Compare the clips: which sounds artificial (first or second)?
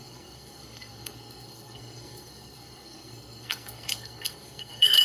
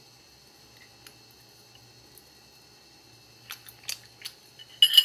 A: first